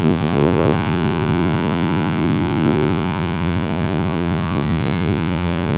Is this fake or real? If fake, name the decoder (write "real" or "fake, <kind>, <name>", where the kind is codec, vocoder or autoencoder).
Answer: fake, vocoder, Vocos